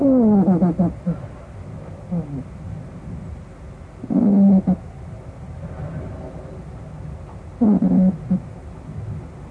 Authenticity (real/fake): real